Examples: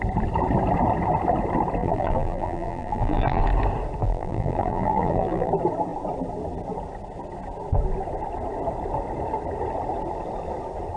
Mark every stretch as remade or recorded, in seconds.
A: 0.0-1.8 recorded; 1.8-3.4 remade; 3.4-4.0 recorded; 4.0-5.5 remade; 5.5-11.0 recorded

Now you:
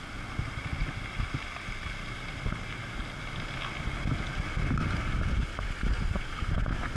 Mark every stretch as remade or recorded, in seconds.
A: 0.0-7.0 recorded

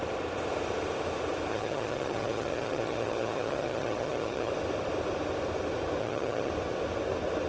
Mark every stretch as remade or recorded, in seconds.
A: 0.0-1.5 recorded; 1.5-4.5 remade; 4.5-6.0 recorded; 6.0-6.5 remade; 6.5-7.5 recorded

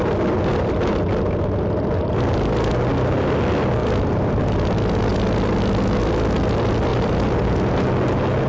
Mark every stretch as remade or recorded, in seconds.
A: 0.0-3.8 recorded; 3.8-4.4 remade; 4.4-5.1 recorded; 5.1-6.0 remade; 6.0-6.9 recorded; 6.9-7.7 remade; 7.7-8.5 recorded

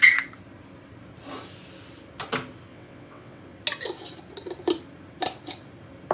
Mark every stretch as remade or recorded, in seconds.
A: 0.0-2.7 recorded; 2.7-3.4 remade; 3.4-6.1 recorded

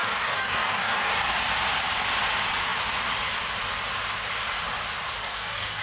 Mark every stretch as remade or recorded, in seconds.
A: 0.0-1.2 remade; 1.2-5.2 recorded; 5.2-5.8 remade

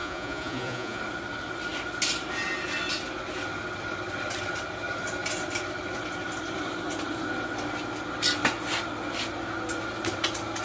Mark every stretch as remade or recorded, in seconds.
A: 0.0-1.0 remade; 1.0-10.6 recorded

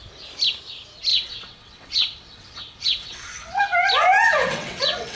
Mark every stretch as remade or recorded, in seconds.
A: 0.0-1.1 recorded; 1.1-3.6 remade; 3.6-4.4 recorded; 4.4-5.2 remade